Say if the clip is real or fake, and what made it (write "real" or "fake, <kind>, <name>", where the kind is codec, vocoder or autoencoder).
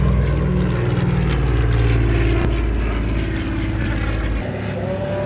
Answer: real